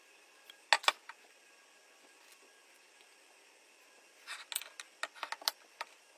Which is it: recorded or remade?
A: recorded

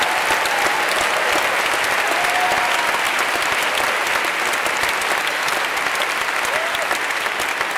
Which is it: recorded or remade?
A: recorded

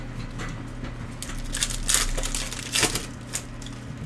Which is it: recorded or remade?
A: recorded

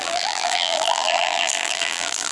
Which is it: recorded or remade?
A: remade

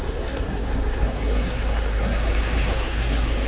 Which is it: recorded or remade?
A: remade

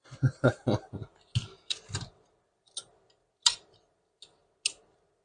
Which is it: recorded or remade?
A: recorded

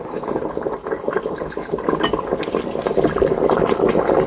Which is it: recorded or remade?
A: recorded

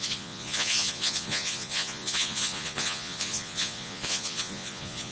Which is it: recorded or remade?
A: remade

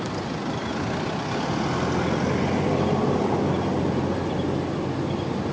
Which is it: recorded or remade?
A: recorded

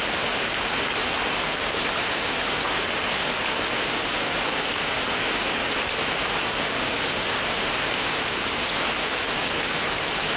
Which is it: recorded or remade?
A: recorded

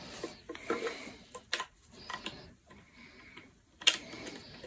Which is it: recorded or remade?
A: recorded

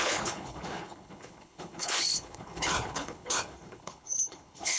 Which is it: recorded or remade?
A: remade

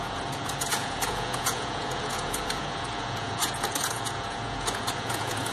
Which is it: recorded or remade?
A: remade